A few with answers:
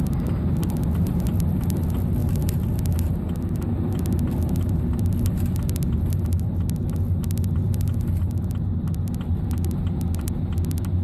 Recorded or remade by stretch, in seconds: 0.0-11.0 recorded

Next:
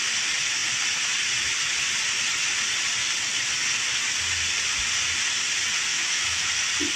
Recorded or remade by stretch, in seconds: 0.0-5.9 recorded; 5.9-6.5 remade; 6.5-7.0 recorded

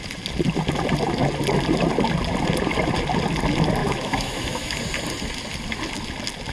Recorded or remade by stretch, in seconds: 0.0-3.8 recorded; 3.8-4.8 remade; 4.8-6.5 recorded

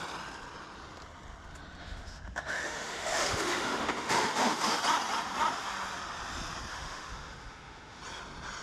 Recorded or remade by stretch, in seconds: 0.0-1.8 recorded; 1.8-4.8 remade; 4.8-6.7 recorded; 6.7-8.0 remade; 8.0-8.6 recorded

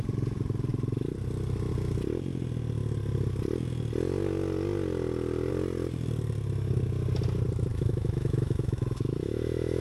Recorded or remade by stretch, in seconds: 0.0-7.7 recorded; 7.7-9.8 remade

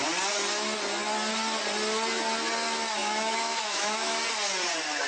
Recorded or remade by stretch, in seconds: 0.0-3.0 recorded; 3.0-4.2 remade; 4.2-5.1 recorded

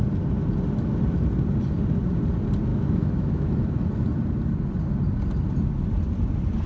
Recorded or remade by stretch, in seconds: 0.0-2.7 recorded; 2.7-3.5 remade; 3.5-6.7 recorded